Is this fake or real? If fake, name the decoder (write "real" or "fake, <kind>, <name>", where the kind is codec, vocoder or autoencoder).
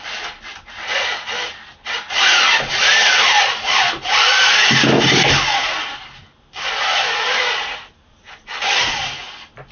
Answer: real